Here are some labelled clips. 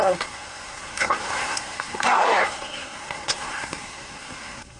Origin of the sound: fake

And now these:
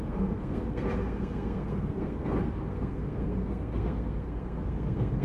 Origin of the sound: fake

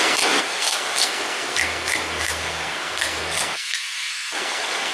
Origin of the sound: fake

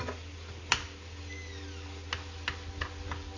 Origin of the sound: real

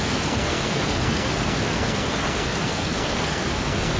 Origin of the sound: fake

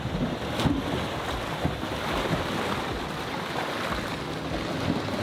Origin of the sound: real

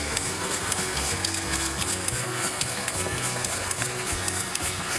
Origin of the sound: fake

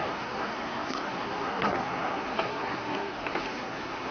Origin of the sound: fake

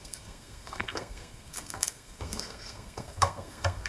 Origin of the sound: fake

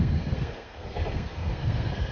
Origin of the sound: fake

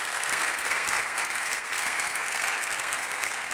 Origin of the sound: fake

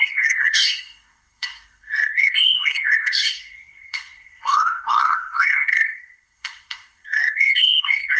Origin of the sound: fake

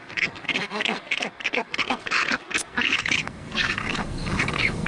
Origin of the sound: fake